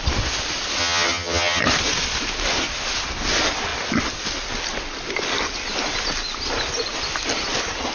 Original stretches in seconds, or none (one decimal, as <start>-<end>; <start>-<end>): 0.0-0.8; 1.6-7.9